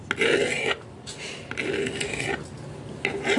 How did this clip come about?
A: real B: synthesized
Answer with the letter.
A